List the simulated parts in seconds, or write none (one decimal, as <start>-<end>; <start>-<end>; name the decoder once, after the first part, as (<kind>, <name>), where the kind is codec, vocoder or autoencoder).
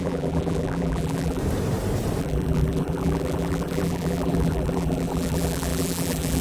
0.0-1.4 (vocoder, BigVGAN v2); 2.2-6.4